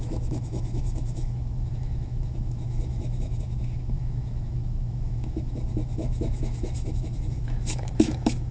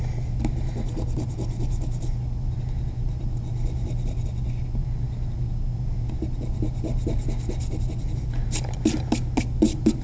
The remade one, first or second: first